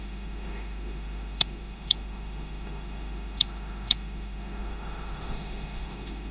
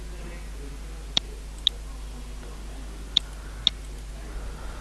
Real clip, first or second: second